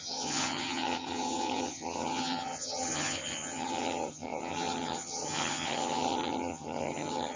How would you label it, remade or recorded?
remade